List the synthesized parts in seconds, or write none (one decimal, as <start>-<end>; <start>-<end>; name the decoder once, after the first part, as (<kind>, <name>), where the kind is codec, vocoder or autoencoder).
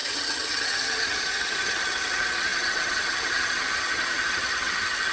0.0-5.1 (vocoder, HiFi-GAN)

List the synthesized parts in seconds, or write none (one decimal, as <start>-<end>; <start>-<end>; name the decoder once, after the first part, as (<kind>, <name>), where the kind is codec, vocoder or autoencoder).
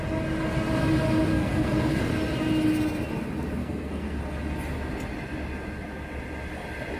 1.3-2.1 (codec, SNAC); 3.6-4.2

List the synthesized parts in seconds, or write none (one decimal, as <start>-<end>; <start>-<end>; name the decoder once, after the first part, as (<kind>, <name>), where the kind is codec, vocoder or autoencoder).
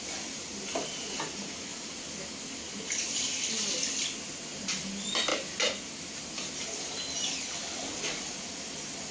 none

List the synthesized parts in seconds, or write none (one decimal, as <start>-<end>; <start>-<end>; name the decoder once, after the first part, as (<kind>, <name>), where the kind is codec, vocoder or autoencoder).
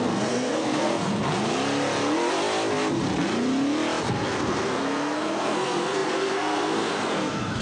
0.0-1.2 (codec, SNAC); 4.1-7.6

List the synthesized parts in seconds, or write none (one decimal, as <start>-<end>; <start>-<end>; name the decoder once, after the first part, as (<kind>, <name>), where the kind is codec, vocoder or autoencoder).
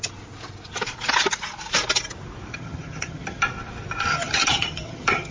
2.5-3.4 (vocoder, HiFi-GAN); 4.1-5.3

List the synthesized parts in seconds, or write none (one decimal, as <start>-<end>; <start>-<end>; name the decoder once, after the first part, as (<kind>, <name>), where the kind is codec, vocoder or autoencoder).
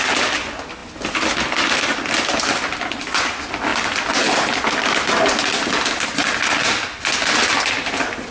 none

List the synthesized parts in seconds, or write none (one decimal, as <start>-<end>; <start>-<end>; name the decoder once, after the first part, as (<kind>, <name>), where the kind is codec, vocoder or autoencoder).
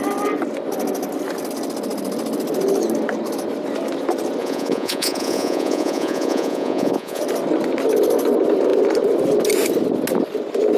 4.4-7.2 (vocoder, Vocos)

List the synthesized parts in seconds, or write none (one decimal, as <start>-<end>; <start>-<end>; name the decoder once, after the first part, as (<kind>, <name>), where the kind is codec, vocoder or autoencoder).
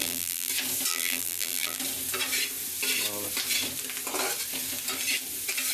0.0-0.5 (vocoder, BigVGAN v2); 0.9-1.8